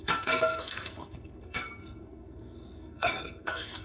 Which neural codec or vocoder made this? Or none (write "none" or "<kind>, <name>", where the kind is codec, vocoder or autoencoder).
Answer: codec, SNAC